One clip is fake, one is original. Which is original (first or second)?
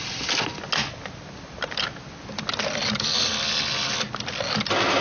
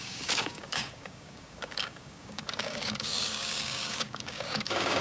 first